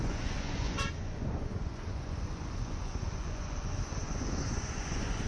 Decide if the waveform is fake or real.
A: fake